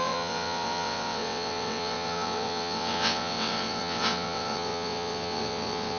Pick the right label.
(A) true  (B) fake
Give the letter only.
B